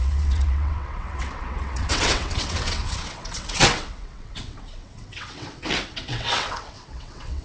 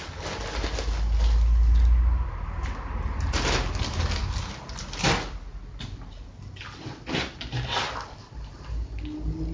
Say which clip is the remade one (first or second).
first